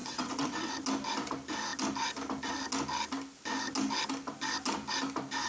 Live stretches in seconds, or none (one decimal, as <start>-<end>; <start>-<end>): 0.7-5.5